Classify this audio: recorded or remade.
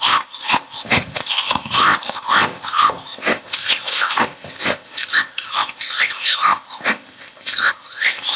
remade